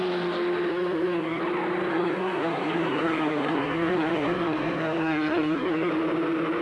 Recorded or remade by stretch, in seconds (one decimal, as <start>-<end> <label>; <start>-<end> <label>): 0.0-0.7 recorded; 0.7-1.4 remade; 1.4-1.9 recorded; 1.9-5.9 remade; 5.9-6.6 recorded